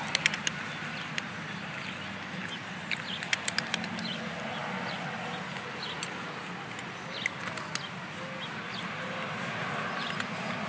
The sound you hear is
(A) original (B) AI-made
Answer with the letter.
A